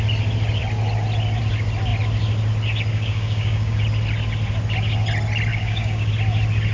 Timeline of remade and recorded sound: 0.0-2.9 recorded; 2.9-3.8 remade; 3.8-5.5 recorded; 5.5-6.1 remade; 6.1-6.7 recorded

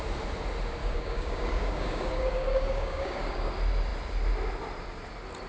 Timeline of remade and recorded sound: 0.0-0.8 recorded; 0.8-3.5 remade; 3.5-5.5 recorded

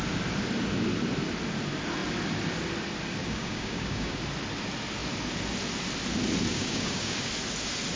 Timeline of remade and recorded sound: 0.0-3.2 recorded; 3.2-4.2 remade; 4.2-6.5 recorded; 6.5-7.3 remade; 7.3-8.0 recorded

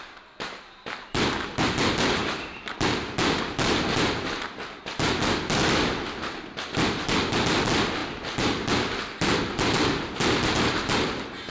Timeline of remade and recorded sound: 0.0-11.5 recorded

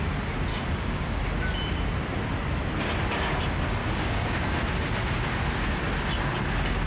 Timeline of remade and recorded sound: 0.0-0.5 recorded; 0.5-1.2 remade; 1.2-3.8 recorded; 3.8-4.5 remade; 4.5-6.9 recorded

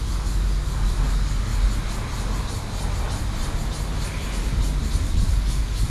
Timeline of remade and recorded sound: 0.0-1.5 remade; 1.5-5.0 recorded; 5.0-5.9 remade

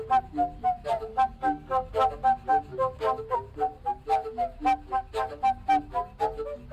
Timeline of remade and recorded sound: 0.0-1.1 recorded; 1.1-1.9 remade; 1.9-6.7 recorded